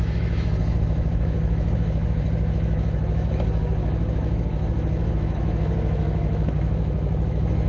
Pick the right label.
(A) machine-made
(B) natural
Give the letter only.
A